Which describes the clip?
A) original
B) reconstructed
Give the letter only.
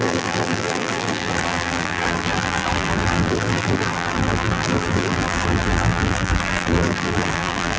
B